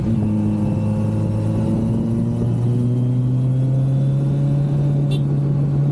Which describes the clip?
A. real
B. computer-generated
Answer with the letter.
A